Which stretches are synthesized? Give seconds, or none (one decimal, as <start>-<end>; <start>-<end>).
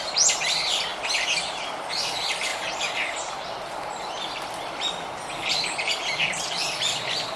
none